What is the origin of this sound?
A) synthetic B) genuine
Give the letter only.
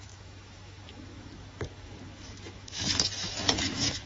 A